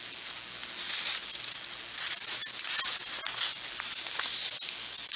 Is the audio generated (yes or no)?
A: no